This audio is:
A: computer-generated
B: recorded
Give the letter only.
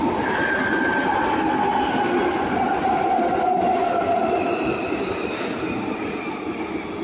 B